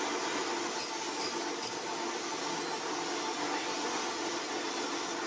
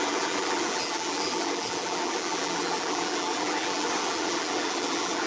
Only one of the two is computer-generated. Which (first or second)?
second